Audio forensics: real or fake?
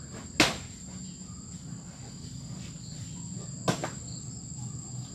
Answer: real